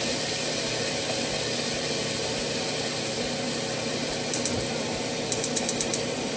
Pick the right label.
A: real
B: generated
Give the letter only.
A